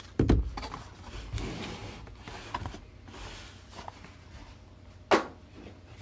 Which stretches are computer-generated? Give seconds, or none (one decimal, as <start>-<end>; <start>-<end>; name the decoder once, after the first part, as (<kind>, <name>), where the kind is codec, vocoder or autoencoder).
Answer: none